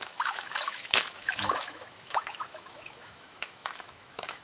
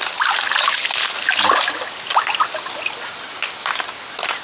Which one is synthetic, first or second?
first